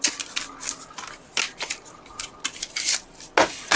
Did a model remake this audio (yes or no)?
no